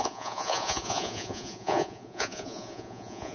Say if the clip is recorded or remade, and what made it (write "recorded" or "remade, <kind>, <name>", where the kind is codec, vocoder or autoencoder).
remade, vocoder, Vocos